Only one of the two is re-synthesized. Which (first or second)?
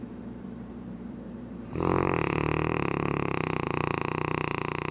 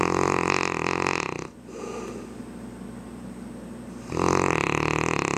first